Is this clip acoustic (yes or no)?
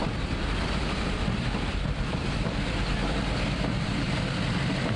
no